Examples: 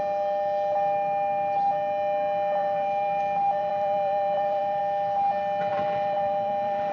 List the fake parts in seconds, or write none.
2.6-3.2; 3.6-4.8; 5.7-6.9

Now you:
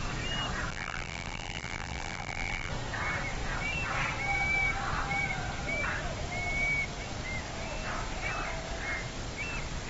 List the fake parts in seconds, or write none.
0.7-2.7

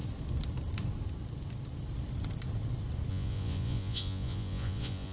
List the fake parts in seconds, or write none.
3.1-5.1